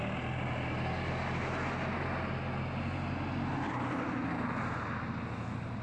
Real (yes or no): yes